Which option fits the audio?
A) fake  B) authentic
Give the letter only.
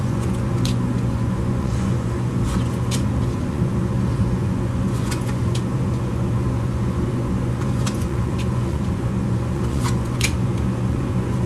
A